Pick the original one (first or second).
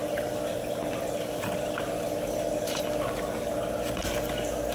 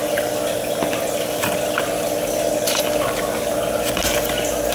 second